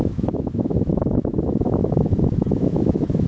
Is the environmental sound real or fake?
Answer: fake